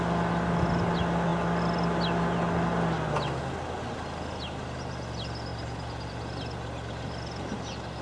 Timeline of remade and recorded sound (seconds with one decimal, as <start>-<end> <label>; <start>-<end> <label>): 0.0-8.0 recorded